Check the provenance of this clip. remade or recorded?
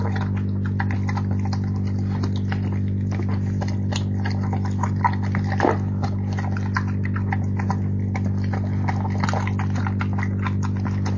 recorded